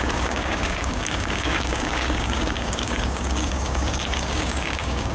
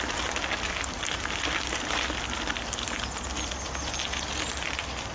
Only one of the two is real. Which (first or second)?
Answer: second